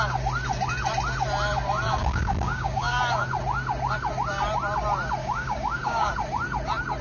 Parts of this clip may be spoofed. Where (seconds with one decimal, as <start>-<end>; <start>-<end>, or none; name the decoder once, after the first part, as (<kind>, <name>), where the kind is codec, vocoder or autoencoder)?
2.0-3.0 (codec, DAC); 5.2-6.1

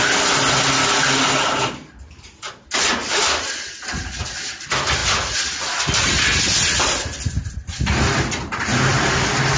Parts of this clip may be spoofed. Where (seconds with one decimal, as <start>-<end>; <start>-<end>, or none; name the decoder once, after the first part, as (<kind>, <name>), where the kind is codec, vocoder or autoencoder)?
none

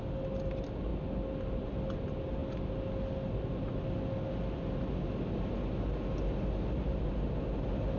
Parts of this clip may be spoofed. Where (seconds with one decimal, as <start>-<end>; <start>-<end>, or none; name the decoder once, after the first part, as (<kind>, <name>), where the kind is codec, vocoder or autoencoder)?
none

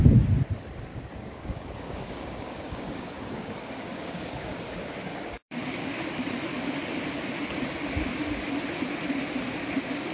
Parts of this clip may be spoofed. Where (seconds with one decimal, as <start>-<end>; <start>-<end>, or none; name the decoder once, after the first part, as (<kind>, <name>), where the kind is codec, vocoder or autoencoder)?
0.9-5.9 (codec, DAC)

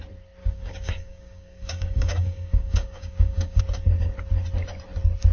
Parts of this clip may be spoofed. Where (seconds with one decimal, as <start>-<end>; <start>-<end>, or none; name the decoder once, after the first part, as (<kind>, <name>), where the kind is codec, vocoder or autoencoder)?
0.4-3.6 (codec, DAC)